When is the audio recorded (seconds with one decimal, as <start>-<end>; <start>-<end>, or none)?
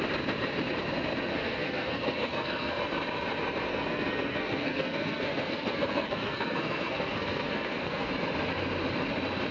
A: 0.0-1.3; 2.8-3.7; 8.1-9.5